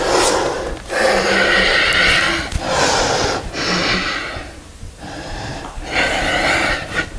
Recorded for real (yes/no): yes